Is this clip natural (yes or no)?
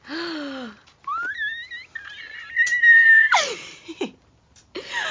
yes